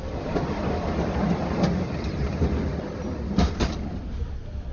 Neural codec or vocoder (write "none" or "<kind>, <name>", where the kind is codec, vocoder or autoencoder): vocoder, BigVGAN v2